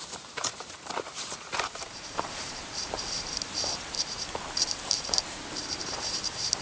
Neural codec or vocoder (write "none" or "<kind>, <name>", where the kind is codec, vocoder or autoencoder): vocoder, BigVGAN v2